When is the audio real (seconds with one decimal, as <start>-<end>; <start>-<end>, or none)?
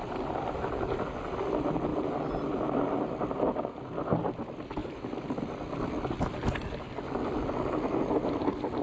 0.0-8.8